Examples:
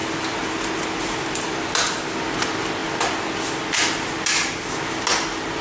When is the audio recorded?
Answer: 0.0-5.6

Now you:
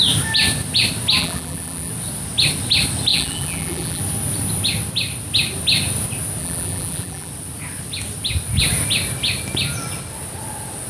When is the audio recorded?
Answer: 0.0-1.2; 1.9-3.1; 4.0-6.4; 7.3-10.9